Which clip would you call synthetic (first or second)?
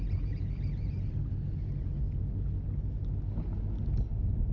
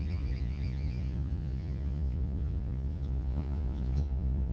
second